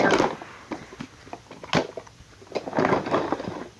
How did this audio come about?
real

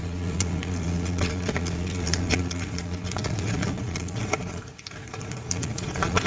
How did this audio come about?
fake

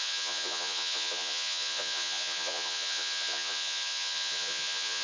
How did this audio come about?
fake